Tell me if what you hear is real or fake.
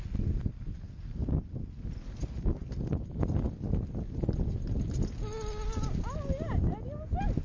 real